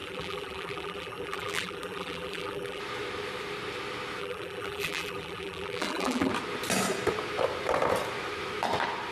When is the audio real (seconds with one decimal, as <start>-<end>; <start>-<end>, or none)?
2.8-4.2; 6.3-9.1